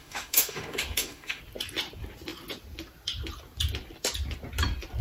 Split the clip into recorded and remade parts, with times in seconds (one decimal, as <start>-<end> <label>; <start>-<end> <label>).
0.0-1.4 remade; 1.4-5.0 recorded